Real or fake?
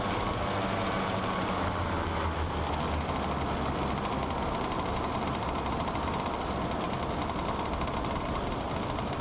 real